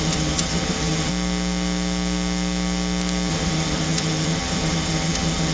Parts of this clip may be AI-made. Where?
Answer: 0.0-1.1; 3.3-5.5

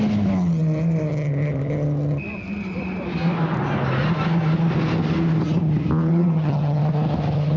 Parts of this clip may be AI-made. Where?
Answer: 6.1-6.8

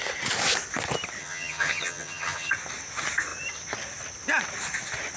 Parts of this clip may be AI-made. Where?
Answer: 1.2-2.5